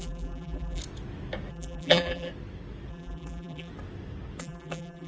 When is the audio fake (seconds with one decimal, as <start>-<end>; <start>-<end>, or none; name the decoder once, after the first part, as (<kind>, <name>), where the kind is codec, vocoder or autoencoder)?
0.0-0.8 (vocoder, BigVGAN v2); 1.5-2.3; 2.9-3.7; 4.4-5.1